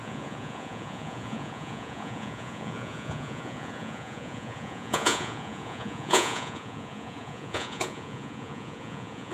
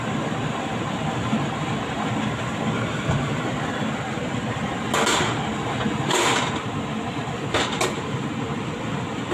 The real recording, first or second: second